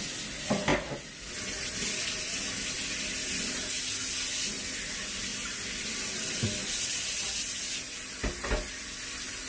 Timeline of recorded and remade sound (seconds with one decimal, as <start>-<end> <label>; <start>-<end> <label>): 0.0-9.5 recorded